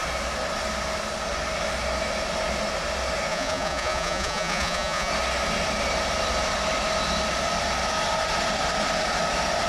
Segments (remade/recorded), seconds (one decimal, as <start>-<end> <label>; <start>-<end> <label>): 0.0-3.3 recorded; 3.3-5.1 remade; 5.1-9.7 recorded